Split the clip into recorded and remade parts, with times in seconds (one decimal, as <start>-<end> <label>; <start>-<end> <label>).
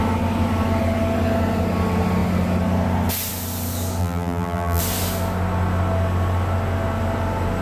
0.0-4.0 recorded; 4.0-4.8 remade; 4.8-7.6 recorded